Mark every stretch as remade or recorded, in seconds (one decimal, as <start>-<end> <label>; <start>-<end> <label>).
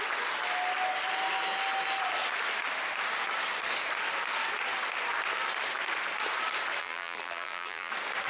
0.0-6.8 recorded; 6.8-7.9 remade; 7.9-8.3 recorded